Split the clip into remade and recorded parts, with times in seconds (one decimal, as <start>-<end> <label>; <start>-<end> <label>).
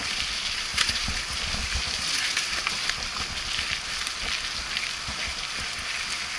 0.0-0.7 recorded; 0.7-1.2 remade; 1.2-6.4 recorded